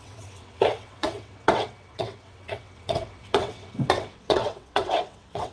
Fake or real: fake